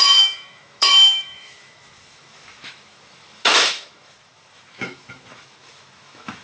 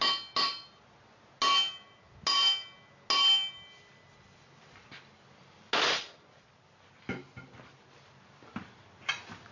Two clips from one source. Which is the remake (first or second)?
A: first